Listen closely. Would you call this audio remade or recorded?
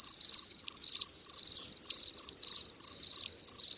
recorded